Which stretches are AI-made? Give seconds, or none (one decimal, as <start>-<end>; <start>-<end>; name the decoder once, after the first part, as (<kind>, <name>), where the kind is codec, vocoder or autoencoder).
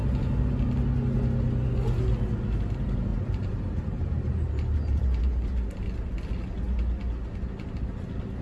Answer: 3.1-5.9 (vocoder, BigVGAN v2)